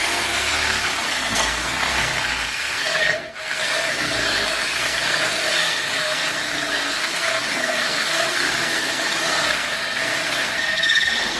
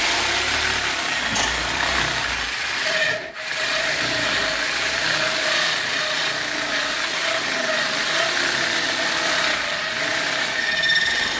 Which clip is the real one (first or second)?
second